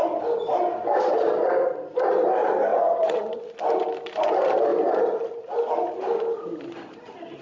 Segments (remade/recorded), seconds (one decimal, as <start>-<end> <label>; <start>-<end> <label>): 0.0-2.7 recorded; 2.7-3.5 remade; 3.5-7.4 recorded